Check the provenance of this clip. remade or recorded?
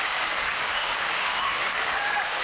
remade